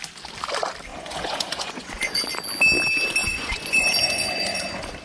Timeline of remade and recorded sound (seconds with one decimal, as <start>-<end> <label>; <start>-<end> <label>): 0.0-0.9 recorded; 0.9-2.3 remade; 2.3-3.2 recorded; 3.2-5.0 remade